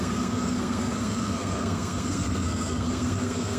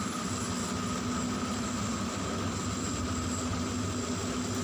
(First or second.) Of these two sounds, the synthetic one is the first